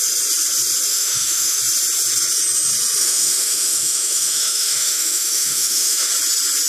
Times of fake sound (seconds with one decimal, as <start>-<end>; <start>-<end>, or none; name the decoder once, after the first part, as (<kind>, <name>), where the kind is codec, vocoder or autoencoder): 0.9-1.6 (autoencoder, DAC-VAE); 3.0-6.1